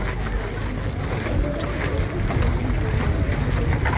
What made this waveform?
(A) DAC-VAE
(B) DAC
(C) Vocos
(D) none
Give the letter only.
D